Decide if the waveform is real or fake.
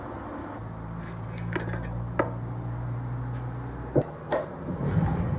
real